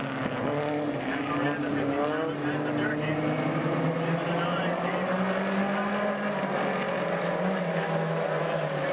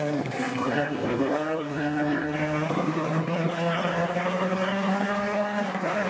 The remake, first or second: second